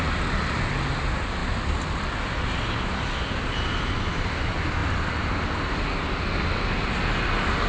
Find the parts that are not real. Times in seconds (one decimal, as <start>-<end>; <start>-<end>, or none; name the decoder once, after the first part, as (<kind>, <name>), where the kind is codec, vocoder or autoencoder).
none